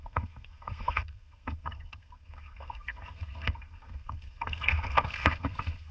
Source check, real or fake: fake